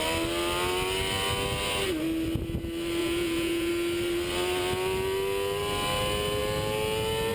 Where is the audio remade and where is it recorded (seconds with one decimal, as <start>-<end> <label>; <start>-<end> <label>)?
0.0-3.0 recorded; 3.0-3.7 remade; 3.7-7.3 recorded